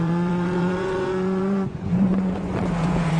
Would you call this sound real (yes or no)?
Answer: no